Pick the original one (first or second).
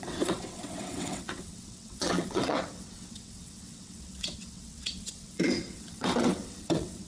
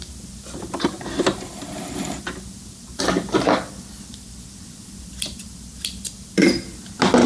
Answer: second